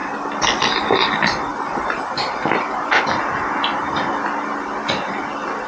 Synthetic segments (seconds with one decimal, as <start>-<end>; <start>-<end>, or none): 1.5-3.0